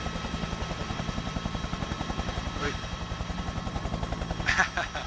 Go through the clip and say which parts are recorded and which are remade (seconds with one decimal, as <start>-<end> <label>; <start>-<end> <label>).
0.0-0.8 recorded; 0.8-3.9 remade; 3.9-5.1 recorded